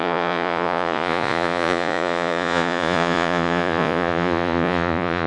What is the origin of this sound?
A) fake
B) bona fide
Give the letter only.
A